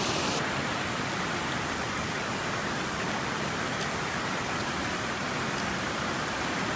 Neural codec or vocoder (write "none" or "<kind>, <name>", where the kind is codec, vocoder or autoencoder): none